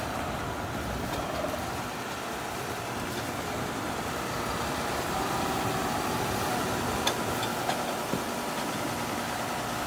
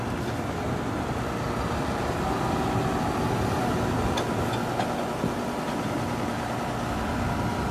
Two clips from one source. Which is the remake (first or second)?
first